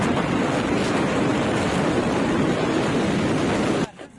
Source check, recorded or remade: recorded